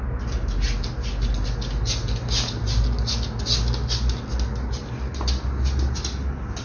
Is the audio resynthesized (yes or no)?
no